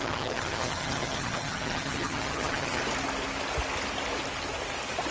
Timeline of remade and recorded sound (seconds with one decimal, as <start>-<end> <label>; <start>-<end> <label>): 0.0-2.8 remade; 2.8-5.1 recorded

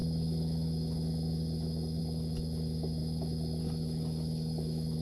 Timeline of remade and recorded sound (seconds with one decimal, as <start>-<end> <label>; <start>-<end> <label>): 0.0-5.0 remade

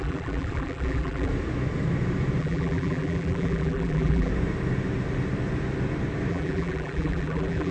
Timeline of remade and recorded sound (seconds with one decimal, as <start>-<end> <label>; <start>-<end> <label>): 0.0-1.3 remade; 1.3-2.4 recorded; 2.4-4.3 remade; 4.3-6.3 recorded; 6.3-7.7 remade

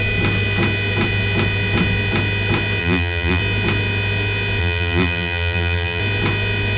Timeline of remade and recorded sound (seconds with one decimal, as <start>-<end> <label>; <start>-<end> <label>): 0.0-2.8 recorded; 2.8-3.4 remade; 3.4-4.6 recorded; 4.6-6.0 remade; 6.0-6.8 recorded

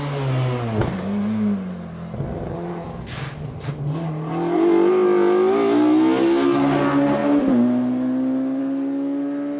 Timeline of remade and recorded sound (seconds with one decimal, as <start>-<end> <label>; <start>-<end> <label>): 0.0-9.6 recorded

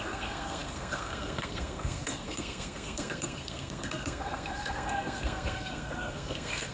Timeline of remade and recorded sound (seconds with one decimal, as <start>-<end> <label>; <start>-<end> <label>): 0.0-6.7 remade

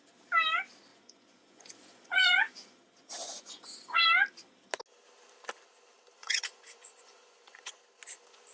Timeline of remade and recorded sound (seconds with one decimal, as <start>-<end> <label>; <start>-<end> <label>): 0.0-0.9 recorded; 0.9-2.8 remade; 2.8-3.2 recorded; 3.2-4.0 remade; 4.0-6.2 recorded; 6.2-7.7 remade; 7.7-8.5 recorded